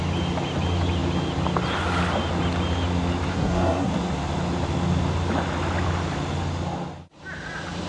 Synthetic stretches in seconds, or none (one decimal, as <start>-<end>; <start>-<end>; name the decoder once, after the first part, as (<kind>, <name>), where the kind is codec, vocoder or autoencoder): 3.3-3.9 (codec, SNAC)